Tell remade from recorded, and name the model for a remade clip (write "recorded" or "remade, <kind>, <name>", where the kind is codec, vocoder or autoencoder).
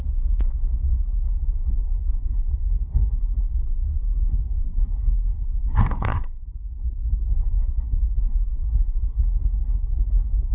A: remade, codec, SNAC